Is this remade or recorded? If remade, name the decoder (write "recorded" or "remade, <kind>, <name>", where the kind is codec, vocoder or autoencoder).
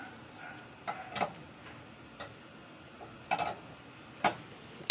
recorded